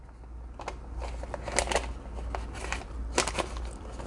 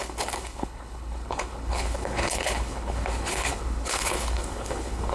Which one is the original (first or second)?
first